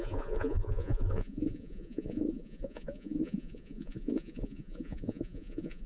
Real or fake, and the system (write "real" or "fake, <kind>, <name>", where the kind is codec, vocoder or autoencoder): fake, vocoder, Vocos